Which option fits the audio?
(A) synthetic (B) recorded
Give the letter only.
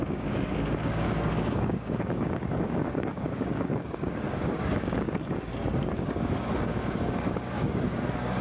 A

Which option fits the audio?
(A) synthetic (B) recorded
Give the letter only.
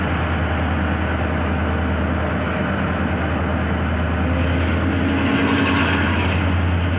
B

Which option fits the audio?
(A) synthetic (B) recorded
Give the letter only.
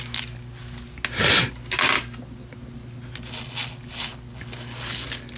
B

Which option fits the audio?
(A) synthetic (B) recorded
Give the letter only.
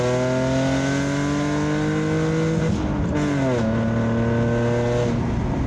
B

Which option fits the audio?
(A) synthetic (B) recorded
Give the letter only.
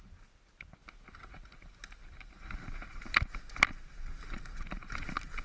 B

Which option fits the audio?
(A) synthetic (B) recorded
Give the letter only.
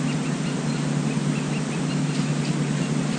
B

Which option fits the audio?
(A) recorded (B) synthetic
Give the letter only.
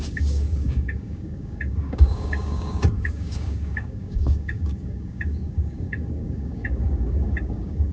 B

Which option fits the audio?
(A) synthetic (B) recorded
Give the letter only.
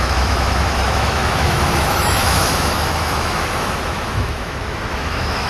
A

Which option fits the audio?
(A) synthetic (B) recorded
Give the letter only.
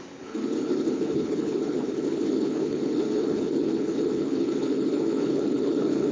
A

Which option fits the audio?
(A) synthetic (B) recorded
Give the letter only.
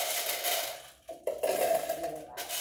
B